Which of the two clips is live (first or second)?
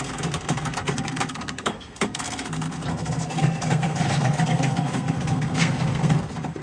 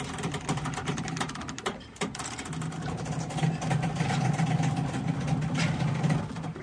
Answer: second